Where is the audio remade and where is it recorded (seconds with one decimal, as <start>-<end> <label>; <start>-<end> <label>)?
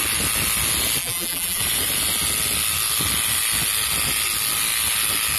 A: 0.0-1.0 recorded; 1.0-1.6 remade; 1.6-5.4 recorded